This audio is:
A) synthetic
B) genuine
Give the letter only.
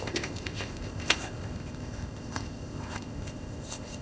A